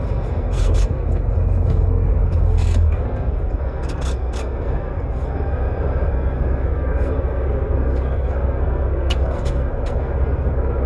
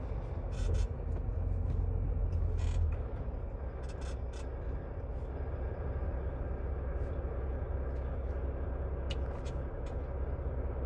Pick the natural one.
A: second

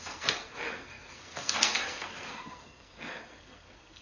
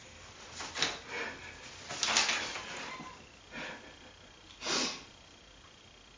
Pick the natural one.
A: second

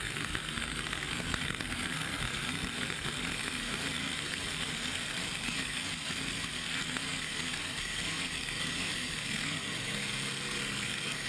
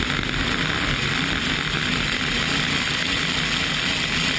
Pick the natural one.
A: second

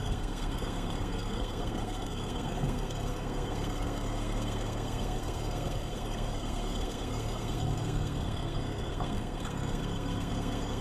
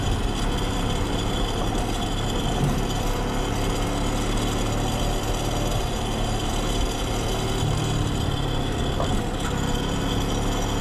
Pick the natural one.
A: second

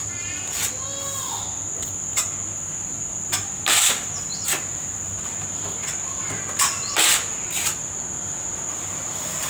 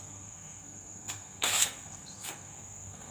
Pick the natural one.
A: first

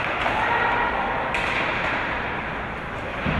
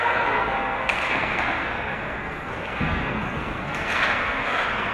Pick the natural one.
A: first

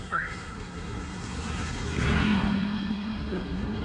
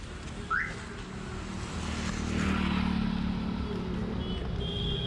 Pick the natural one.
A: second